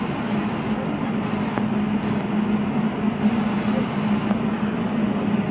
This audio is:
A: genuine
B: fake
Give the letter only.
A